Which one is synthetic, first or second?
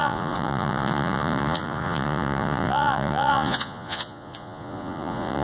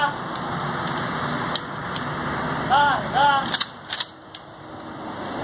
first